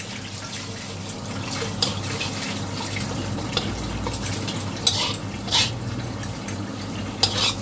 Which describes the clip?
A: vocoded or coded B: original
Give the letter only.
B